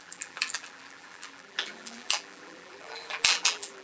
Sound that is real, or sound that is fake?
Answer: fake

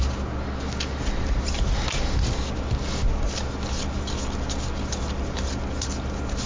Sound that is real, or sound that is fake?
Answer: real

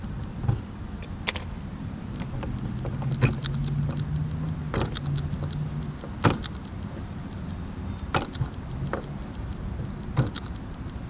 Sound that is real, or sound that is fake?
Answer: real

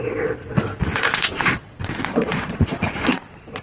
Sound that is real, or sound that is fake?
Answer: fake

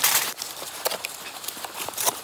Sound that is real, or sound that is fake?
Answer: fake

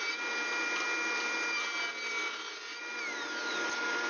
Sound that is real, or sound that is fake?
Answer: real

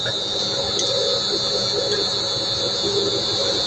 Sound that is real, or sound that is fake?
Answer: real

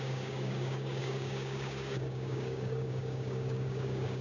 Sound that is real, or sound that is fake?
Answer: fake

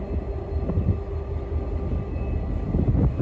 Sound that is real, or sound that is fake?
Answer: real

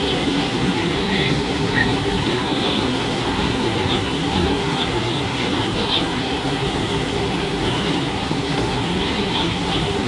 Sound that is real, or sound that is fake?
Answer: fake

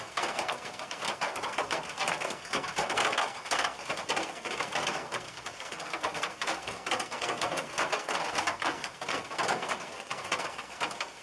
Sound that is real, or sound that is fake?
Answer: fake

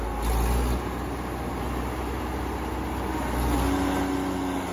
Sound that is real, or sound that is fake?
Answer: real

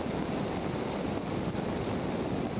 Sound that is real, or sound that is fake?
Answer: real